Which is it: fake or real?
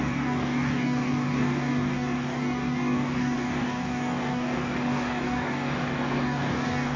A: fake